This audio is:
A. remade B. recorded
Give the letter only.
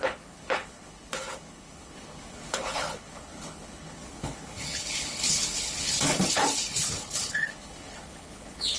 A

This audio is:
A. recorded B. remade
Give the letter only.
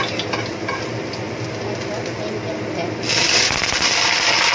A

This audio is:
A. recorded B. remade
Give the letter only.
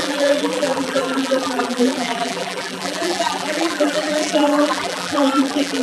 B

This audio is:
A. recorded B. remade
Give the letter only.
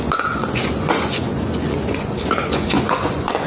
B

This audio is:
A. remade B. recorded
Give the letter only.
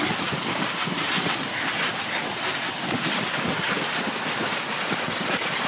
B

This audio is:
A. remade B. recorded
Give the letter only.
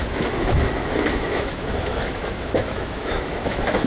A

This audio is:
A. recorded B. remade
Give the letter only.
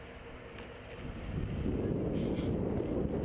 A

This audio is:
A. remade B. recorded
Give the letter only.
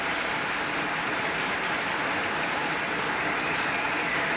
B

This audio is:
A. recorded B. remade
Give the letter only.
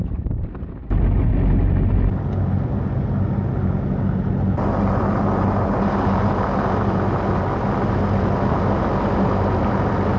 A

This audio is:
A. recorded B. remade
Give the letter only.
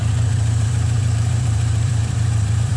B